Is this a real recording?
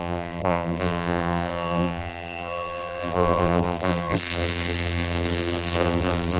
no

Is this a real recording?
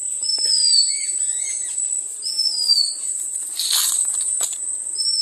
yes